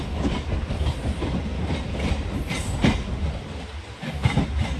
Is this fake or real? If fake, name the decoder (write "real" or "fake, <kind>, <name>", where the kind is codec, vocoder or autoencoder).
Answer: real